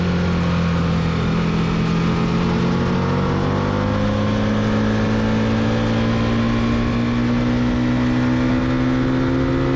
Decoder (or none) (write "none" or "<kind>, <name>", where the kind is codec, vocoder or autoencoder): none